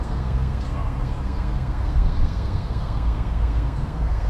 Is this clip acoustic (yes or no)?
no